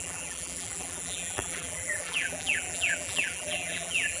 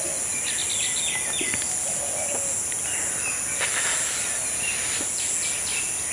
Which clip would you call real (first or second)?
second